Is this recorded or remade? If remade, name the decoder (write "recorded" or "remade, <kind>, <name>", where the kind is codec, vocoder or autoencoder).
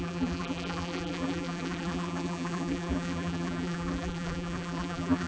remade, vocoder, BigVGAN v2